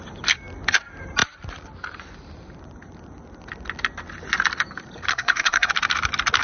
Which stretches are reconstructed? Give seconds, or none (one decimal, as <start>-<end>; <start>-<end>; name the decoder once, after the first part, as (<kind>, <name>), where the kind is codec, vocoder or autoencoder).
5.1-5.7 (codec, SNAC)